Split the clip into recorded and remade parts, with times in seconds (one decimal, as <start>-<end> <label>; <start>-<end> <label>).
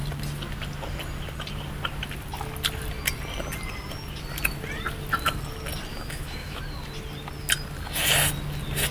0.0-5.9 recorded; 5.9-6.6 remade; 6.6-8.9 recorded